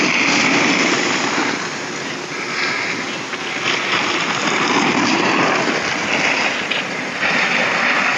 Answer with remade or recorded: recorded